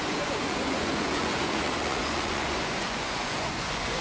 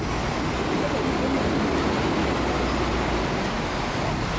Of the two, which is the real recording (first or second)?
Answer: second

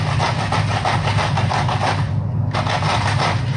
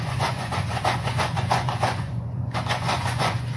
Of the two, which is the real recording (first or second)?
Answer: first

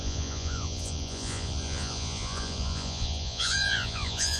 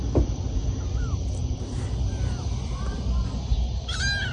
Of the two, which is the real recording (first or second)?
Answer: second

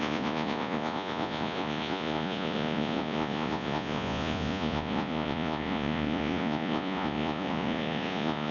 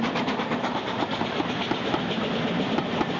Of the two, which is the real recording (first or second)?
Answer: second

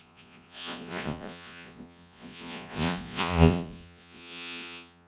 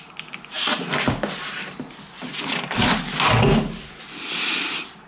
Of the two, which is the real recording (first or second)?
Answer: second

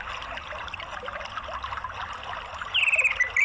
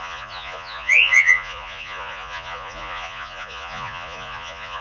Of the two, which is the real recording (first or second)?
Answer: first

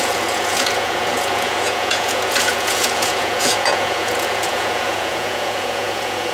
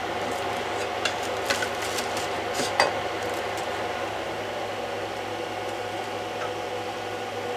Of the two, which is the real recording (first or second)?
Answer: second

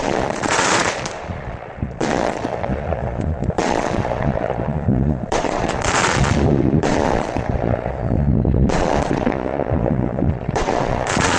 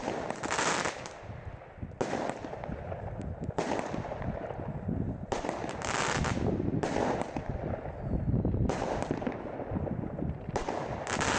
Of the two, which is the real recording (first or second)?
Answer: second